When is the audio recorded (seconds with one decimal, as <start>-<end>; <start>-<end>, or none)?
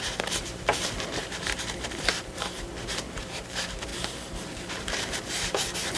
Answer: none